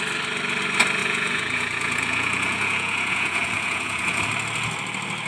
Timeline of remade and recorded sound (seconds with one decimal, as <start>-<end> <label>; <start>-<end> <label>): 0.0-1.0 recorded; 1.0-4.2 remade; 4.2-5.3 recorded

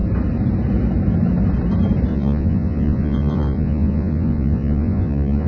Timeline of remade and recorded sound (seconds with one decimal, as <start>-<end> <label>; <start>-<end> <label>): 0.0-2.1 recorded; 2.1-5.5 remade

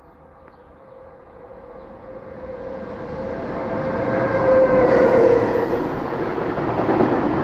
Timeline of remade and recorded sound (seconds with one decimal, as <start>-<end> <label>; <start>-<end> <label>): 0.0-0.6 recorded; 0.6-2.8 remade; 2.8-4.3 recorded; 4.3-6.5 remade; 6.5-7.4 recorded